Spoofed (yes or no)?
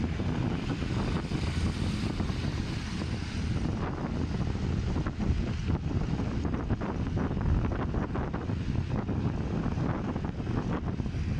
no